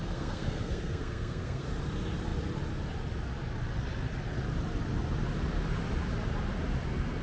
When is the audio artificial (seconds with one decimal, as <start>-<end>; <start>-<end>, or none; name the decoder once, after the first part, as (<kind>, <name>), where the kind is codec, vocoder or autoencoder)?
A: 0.0-1.6 (codec, SNAC)